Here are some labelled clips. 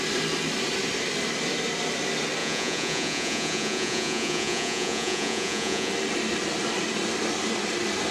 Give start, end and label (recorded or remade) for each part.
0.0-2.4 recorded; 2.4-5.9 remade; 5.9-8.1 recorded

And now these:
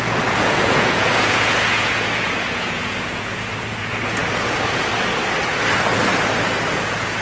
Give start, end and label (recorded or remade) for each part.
0.0-4.2 remade; 4.2-6.7 recorded; 6.7-7.2 remade

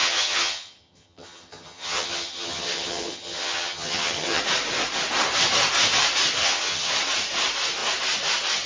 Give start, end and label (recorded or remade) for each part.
0.0-4.4 remade; 4.4-6.4 recorded; 6.4-6.9 remade; 6.9-8.7 recorded

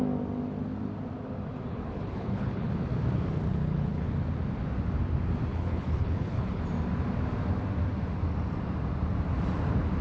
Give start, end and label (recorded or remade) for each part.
0.0-1.7 recorded; 1.7-2.7 remade; 2.7-3.5 recorded; 3.5-4.1 remade; 4.1-5.5 recorded; 5.5-6.6 remade; 6.6-10.0 recorded

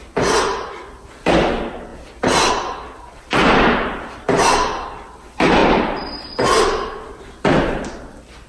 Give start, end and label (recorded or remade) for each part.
0.0-8.5 recorded

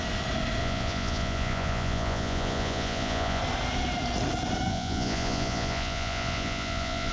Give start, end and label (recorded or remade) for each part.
0.0-0.6 recorded; 0.6-3.4 remade; 3.4-4.7 recorded; 4.7-7.1 remade